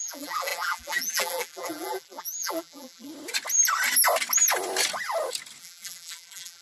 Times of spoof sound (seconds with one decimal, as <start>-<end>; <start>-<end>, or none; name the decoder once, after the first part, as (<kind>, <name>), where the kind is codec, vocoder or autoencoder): 0.0-3.1 (vocoder, BigVGAN v2); 5.6-6.6

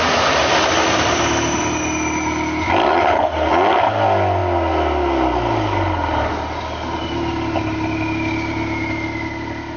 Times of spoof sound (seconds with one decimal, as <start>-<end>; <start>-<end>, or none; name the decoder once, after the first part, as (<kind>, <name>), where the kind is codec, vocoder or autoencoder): none

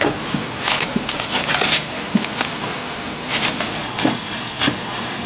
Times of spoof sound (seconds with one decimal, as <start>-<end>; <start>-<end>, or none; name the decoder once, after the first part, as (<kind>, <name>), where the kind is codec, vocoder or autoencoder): 3.8-5.3 (codec, DAC)

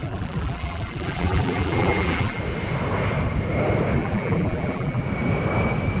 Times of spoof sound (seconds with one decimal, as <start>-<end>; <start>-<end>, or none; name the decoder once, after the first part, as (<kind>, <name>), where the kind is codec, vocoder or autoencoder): 0.0-2.4 (vocoder, BigVGAN v2); 4.0-5.0

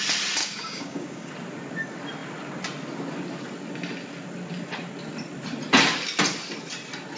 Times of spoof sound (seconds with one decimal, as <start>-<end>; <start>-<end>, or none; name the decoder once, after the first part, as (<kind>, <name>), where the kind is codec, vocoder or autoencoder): 0.4-1.3 (codec, DAC)

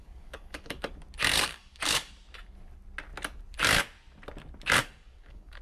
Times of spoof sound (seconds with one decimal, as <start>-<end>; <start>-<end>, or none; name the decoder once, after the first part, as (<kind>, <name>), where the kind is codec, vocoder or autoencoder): 0.0-0.9 (codec, DAC); 1.3-2.1; 4.8-5.6

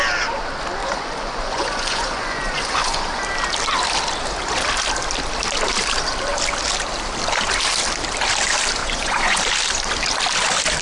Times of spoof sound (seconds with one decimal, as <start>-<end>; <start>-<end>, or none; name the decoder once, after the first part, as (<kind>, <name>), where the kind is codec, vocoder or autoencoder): 0.8-3.2 (vocoder, Vocos); 8.8-9.4